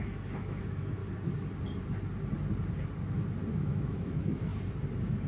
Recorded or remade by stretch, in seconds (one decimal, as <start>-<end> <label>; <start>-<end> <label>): 0.0-1.0 remade; 1.0-3.5 recorded; 3.5-4.5 remade; 4.5-5.3 recorded